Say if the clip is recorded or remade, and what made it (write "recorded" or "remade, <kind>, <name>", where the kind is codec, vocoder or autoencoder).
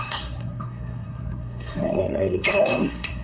remade, codec, SNAC